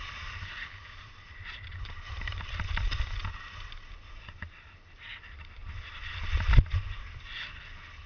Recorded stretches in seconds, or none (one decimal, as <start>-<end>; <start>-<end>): 0.0-8.1